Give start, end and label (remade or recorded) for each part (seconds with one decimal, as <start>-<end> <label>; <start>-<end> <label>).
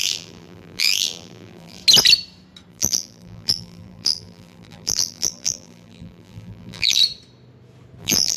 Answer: 0.0-1.8 remade; 1.8-2.7 recorded; 2.7-7.0 remade; 7.0-8.0 recorded; 8.0-8.4 remade